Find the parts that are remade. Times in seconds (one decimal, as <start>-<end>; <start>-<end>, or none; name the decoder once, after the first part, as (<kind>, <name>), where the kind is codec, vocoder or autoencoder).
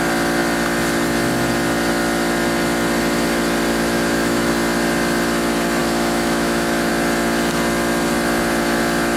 3.7-4.5 (autoencoder, DAC-VAE); 5.8-6.9